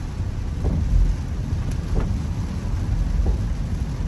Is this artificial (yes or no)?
no